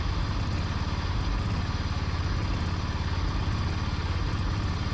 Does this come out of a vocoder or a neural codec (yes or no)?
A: no